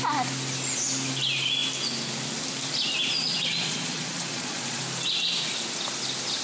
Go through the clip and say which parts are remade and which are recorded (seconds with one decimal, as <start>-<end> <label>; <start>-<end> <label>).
0.0-3.3 recorded; 3.3-4.8 remade; 4.8-6.4 recorded